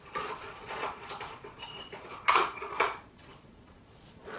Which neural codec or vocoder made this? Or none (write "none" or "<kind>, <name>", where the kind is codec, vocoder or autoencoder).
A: vocoder, Vocos